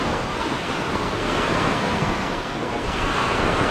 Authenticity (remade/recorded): remade